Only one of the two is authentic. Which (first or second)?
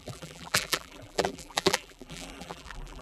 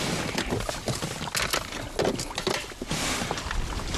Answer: second